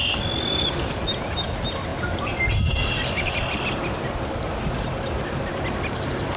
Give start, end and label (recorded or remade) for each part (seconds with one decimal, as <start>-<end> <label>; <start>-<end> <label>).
0.0-6.4 recorded